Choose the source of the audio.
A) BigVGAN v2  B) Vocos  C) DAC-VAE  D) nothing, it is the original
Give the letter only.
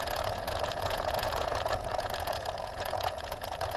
B